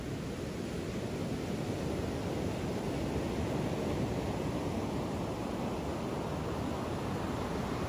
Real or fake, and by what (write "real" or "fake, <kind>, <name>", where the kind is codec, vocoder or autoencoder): real